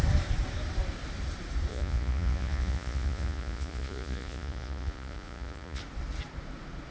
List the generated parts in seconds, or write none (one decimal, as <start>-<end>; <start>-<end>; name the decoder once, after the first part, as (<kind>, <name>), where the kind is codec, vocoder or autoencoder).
1.7-5.8 (vocoder, Vocos)